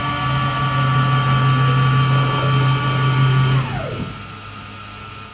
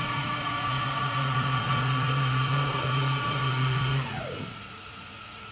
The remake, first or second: second